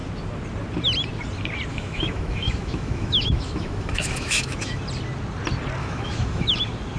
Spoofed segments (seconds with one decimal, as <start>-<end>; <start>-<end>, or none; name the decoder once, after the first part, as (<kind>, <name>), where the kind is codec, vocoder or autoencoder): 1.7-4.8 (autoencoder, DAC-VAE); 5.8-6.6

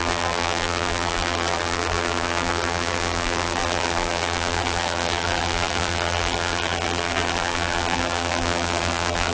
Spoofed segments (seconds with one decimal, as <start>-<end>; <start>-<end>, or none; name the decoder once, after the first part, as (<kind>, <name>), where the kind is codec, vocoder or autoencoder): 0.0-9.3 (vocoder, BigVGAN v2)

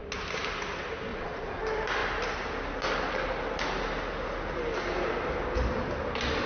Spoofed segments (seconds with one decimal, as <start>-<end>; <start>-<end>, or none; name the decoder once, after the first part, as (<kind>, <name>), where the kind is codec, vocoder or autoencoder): 1.1-1.6 (vocoder, Vocos)

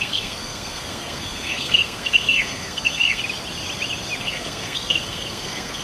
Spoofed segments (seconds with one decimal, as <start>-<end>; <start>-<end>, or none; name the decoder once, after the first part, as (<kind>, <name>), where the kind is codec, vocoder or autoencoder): 0.0-3.2 (codec, SNAC); 4.2-5.8

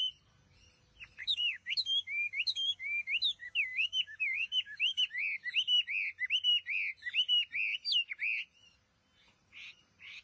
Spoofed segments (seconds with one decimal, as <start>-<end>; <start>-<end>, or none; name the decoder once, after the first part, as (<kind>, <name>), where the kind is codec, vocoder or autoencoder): 1.2-5.0 (codec, DAC)

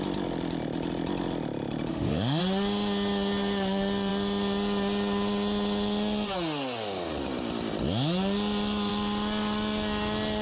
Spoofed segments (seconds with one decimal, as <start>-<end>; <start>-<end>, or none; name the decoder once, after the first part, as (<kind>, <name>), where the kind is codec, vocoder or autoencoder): 1.9-2.4 (autoencoder, DAC-VAE)